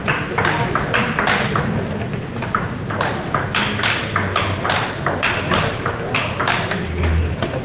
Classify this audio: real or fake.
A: real